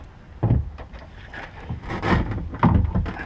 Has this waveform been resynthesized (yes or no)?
no